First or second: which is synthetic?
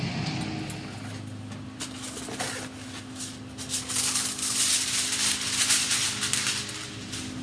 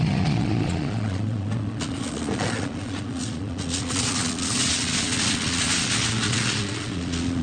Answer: second